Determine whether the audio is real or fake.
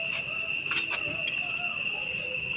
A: real